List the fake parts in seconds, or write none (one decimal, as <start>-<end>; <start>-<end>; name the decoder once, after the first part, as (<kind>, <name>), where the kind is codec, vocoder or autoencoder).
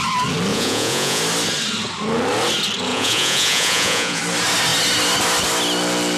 0.5-1.2 (vocoder, Vocos); 2.9-4.2